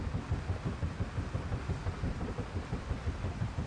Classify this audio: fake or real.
real